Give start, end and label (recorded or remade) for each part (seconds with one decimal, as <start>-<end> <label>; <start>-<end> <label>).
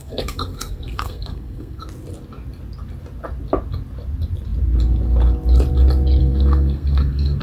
0.0-1.8 remade; 1.8-6.2 recorded; 6.2-7.4 remade